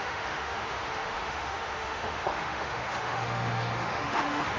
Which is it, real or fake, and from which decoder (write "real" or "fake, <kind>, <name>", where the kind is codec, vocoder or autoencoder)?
fake, autoencoder, DAC-VAE